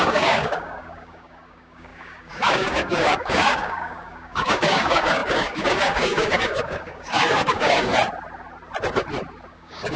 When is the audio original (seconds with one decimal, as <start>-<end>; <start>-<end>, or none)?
7.9-9.5